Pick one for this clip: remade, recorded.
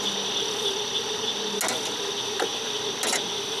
recorded